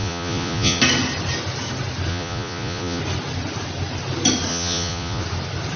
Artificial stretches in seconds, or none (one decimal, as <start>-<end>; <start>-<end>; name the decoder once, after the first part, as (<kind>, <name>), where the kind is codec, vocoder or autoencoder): 0.0-0.8 (vocoder, Vocos); 2.1-3.0; 4.5-5.2